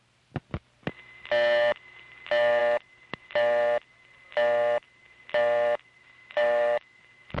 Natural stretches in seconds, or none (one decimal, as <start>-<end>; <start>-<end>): 0.0-6.0; 7.0-7.4